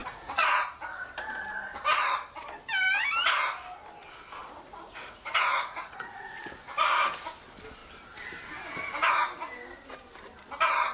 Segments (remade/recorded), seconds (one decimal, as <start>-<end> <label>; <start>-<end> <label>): 0.0-0.6 remade; 0.6-4.4 recorded; 4.4-6.4 remade; 6.4-10.9 recorded